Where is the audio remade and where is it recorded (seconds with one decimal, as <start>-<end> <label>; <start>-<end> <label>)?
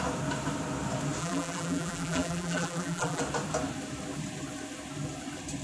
0.0-1.2 recorded; 1.2-3.2 remade; 3.2-5.6 recorded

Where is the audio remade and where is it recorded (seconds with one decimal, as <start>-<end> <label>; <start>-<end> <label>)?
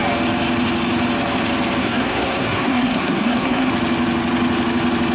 0.0-1.8 recorded; 1.8-3.7 remade; 3.7-5.1 recorded